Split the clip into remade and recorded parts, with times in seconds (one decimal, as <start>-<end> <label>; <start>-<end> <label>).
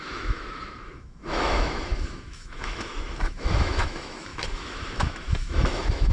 0.0-6.1 remade